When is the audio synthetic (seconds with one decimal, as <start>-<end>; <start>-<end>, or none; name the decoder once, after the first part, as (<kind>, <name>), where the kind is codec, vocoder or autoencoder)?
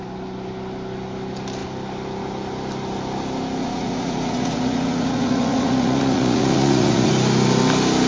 3.6-7.1 (vocoder, Vocos)